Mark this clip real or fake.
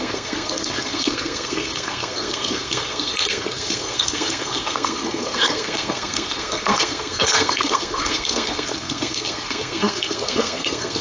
fake